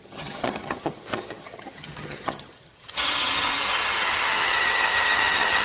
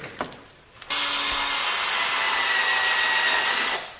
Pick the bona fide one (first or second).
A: second